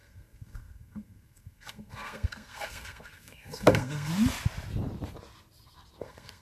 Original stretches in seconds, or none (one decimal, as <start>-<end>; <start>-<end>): 4.1-6.0